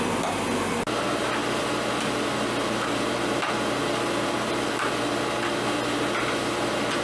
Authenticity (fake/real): real